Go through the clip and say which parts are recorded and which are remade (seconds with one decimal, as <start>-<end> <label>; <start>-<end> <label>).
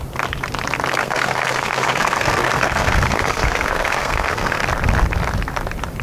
0.0-1.0 recorded; 1.0-4.6 remade; 4.6-6.0 recorded